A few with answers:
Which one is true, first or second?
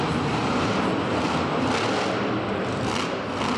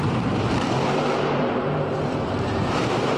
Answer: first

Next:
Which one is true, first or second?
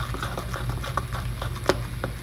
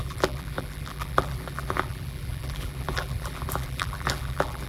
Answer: first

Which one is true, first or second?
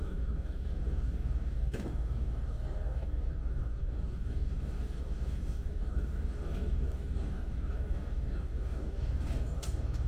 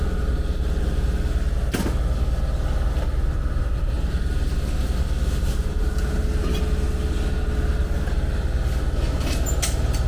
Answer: second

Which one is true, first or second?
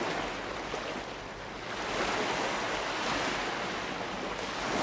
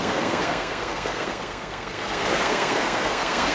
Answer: first